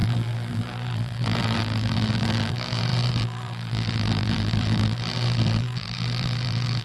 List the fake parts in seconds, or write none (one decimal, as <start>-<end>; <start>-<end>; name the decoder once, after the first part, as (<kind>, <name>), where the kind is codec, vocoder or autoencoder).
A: 0.0-6.8 (vocoder, BigVGAN v2)